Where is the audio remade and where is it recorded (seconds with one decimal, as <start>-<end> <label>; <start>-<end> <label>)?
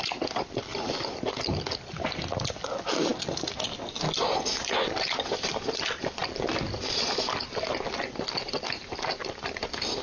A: 0.0-0.7 remade; 0.7-1.5 recorded; 1.5-3.1 remade; 3.1-4.6 recorded; 4.6-10.0 remade